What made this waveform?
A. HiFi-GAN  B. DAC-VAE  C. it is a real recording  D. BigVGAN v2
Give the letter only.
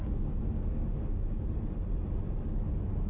C